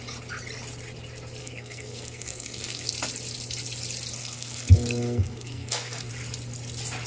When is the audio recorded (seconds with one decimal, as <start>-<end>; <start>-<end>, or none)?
0.0-1.4; 2.9-4.2; 6.1-7.1